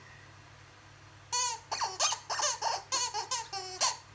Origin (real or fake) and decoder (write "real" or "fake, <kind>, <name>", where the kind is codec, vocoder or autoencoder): real